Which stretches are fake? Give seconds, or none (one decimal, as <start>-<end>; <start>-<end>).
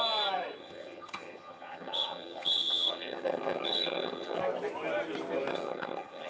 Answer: 0.6-4.4; 5.5-6.3